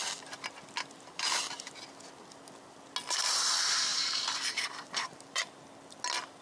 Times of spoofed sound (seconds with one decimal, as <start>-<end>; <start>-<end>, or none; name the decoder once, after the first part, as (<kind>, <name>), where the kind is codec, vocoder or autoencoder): 3.9-5.6 (vocoder, BigVGAN v2)